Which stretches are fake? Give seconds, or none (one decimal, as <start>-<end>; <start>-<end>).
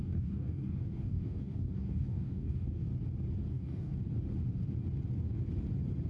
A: 0.0-2.9; 3.5-3.9